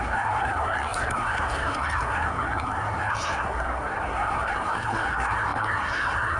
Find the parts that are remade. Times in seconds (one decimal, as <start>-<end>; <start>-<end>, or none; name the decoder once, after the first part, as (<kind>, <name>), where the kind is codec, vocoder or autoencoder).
0.0-6.4 (codec, SNAC)